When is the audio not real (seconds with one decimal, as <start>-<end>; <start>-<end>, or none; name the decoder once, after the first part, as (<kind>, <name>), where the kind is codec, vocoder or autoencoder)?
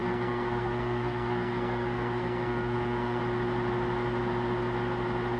0.0-3.2 (codec, SNAC)